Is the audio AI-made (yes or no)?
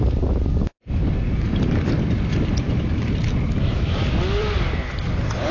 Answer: yes